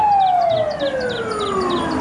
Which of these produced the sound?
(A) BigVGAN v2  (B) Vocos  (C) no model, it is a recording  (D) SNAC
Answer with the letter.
C